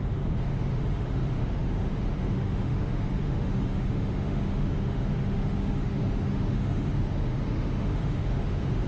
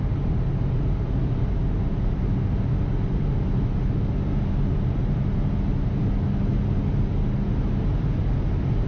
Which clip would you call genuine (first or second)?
second